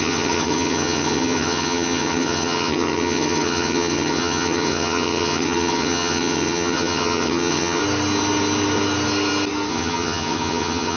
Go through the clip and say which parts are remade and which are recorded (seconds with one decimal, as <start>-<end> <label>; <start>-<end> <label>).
0.0-7.8 remade; 7.8-9.7 recorded; 9.7-11.0 remade